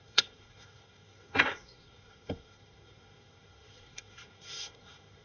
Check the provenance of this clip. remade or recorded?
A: remade